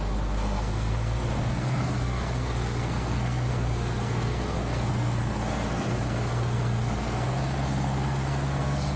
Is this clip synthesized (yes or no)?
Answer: yes